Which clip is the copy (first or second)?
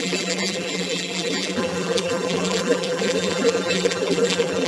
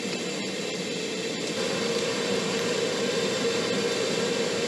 first